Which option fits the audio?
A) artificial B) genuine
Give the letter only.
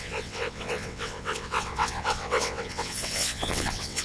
A